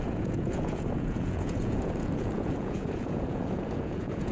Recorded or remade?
remade